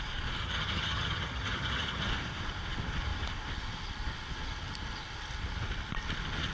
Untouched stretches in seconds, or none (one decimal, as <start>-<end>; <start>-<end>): 0.0-0.4; 2.1-6.5